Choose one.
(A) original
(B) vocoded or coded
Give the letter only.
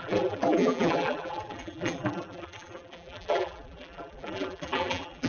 B